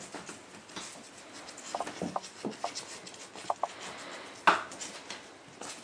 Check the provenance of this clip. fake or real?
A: real